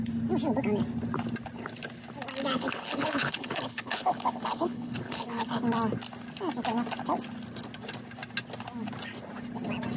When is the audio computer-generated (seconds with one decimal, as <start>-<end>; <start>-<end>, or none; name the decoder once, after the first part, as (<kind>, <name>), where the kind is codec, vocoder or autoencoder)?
2.5-5.6 (codec, HILCodec)